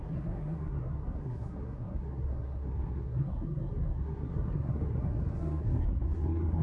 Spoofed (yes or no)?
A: yes